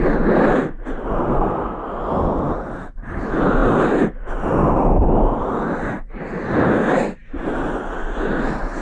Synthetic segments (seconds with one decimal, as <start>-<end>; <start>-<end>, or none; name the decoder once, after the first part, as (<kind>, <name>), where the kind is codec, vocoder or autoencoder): 1.2-1.8 (codec, SNAC)